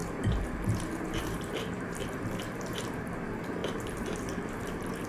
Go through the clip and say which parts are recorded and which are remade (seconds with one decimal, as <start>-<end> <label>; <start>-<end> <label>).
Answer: 0.0-3.1 remade; 3.1-3.6 recorded; 3.6-5.1 remade